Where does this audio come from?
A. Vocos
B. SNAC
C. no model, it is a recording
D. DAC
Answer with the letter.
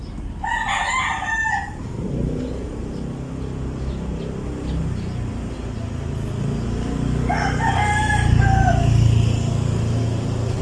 C